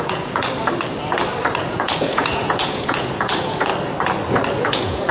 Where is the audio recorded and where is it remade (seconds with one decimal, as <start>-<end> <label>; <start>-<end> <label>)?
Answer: 0.0-0.4 remade; 0.4-1.6 recorded; 1.6-3.7 remade; 3.7-4.6 recorded; 4.6-5.1 remade